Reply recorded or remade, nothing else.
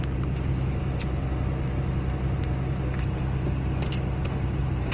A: recorded